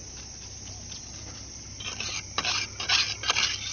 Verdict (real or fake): real